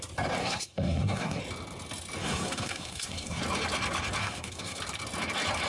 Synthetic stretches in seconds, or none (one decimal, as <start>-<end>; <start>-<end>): 0.4-1.4; 2.2-3.4; 4.2-4.8